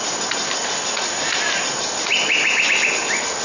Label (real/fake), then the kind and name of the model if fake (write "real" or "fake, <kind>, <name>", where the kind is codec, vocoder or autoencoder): real